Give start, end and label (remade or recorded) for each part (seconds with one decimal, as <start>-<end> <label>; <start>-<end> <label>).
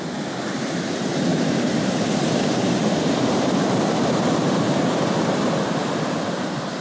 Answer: 0.0-1.3 recorded; 1.3-5.4 remade; 5.4-6.8 recorded